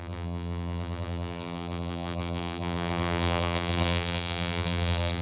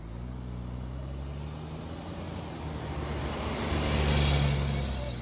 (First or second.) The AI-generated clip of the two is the first